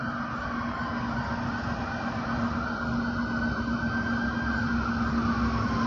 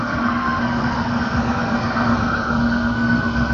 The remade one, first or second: second